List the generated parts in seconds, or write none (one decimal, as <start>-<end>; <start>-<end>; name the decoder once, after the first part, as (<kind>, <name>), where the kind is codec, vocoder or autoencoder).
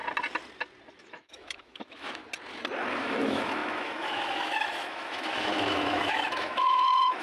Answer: 0.9-2.2 (autoencoder, DAC-VAE); 3.0-7.2